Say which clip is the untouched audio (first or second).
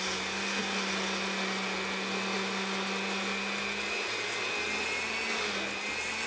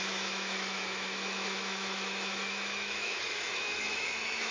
first